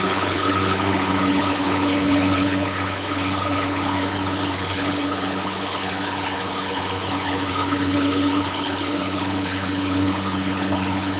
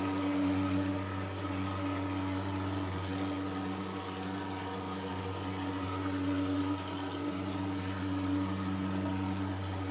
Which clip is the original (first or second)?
second